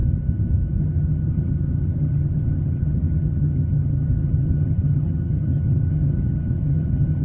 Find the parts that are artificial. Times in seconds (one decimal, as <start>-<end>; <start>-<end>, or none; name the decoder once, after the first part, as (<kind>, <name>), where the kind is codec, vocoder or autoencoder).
0.8-7.2 (vocoder, HiFi-GAN)